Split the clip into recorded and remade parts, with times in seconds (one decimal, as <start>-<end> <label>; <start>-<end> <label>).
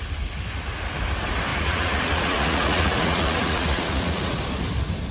0.0-1.5 recorded; 1.5-4.4 remade; 4.4-5.1 recorded